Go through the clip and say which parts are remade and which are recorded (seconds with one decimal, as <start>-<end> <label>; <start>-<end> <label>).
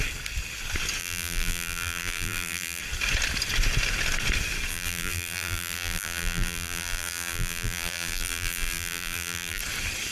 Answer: 0.0-1.0 recorded; 1.0-2.8 remade; 2.8-4.7 recorded; 4.7-9.6 remade; 9.6-10.1 recorded